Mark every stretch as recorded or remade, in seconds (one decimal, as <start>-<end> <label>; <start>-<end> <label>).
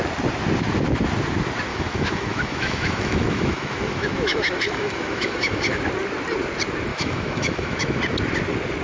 0.0-1.7 recorded; 1.7-5.8 remade; 5.8-6.9 recorded; 6.9-8.0 remade; 8.0-8.8 recorded